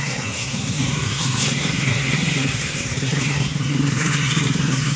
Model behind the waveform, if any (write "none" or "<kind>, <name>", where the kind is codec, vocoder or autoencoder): codec, SNAC